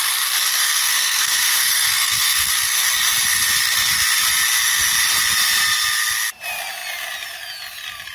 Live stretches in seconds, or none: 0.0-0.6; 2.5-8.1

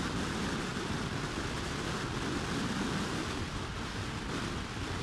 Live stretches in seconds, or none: 0.0-5.0

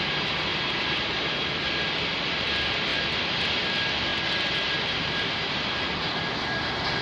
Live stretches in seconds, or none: 0.0-2.9; 3.6-4.1; 6.3-7.0

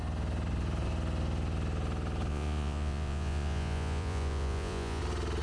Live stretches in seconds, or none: 0.0-2.3; 5.0-5.4